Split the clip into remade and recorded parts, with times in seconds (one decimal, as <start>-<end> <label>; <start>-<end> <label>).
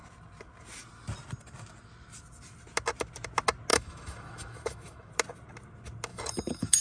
0.0-3.7 recorded; 3.7-5.1 remade; 5.1-6.1 recorded; 6.1-6.8 remade